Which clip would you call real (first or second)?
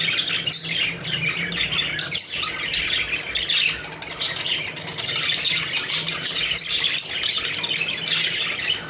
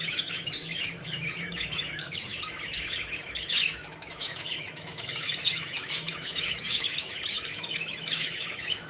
first